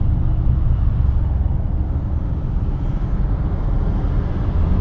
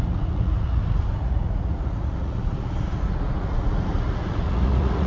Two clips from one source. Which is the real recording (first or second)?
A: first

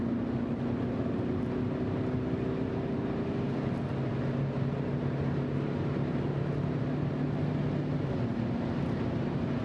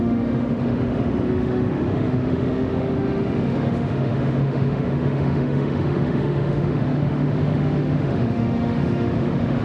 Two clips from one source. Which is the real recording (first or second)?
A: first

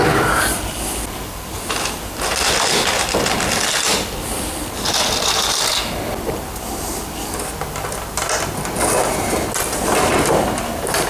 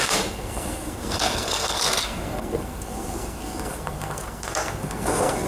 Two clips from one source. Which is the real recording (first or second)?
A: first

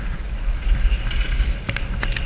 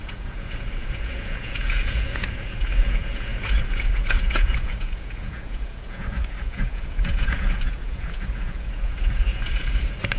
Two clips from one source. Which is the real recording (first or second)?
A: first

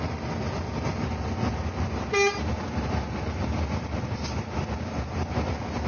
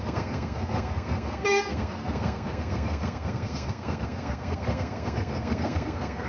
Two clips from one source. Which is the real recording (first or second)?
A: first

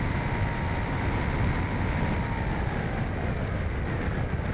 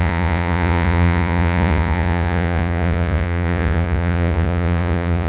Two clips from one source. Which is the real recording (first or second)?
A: first